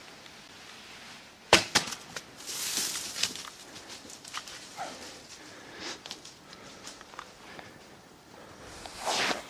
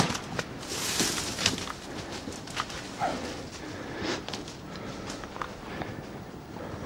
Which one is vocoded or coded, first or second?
first